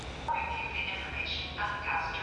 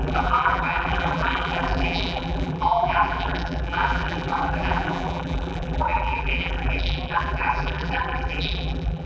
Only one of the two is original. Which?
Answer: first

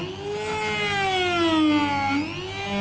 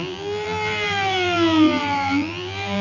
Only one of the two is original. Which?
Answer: first